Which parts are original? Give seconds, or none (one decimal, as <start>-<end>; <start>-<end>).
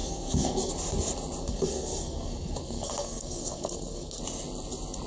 0.7-1.4; 4.2-5.1